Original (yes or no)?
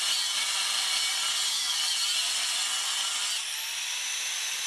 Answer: yes